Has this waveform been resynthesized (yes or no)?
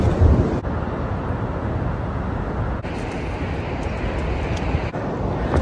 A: no